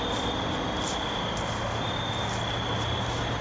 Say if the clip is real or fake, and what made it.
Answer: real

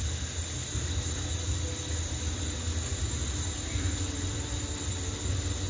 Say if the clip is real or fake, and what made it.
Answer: real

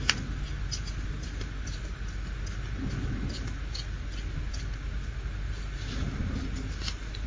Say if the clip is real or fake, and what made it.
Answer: real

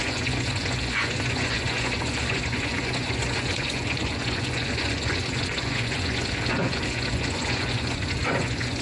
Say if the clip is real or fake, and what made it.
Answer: fake, vocoder, Vocos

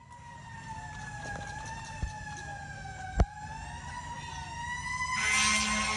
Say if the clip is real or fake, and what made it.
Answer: real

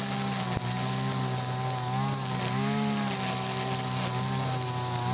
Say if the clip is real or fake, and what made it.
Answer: real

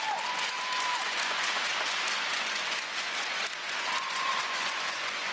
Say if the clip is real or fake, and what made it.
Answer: fake, vocoder, Vocos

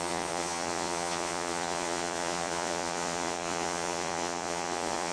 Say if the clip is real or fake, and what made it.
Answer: fake, vocoder, Vocos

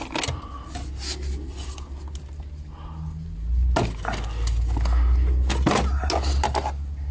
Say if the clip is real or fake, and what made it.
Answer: real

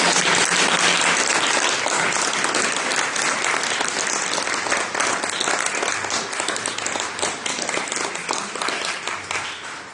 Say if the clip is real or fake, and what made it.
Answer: real